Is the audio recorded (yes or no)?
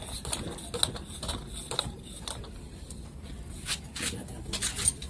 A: yes